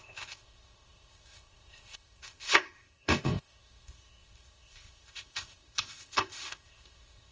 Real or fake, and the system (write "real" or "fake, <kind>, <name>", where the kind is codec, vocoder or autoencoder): fake, codec, ZipCodec